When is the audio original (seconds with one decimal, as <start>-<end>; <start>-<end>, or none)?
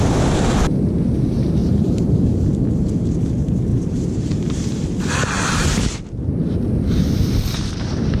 0.0-1.6; 2.6-3.7; 5.9-8.2